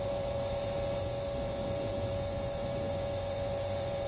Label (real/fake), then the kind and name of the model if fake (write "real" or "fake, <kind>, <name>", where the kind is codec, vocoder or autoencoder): fake, vocoder, Vocos